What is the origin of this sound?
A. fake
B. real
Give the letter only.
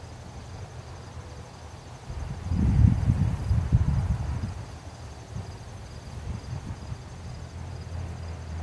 B